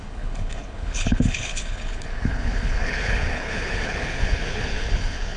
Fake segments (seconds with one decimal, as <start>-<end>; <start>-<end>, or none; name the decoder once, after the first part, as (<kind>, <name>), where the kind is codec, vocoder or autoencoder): 0.0-5.4 (codec, HILCodec)